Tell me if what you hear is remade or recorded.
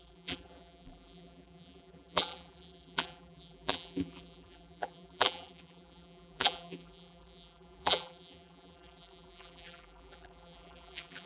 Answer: remade